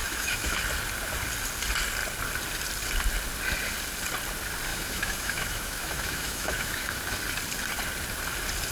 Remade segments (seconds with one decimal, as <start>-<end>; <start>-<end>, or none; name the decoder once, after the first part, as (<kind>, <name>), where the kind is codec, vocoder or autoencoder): 0.0-0.6 (autoencoder, DAC-VAE); 4.7-7.0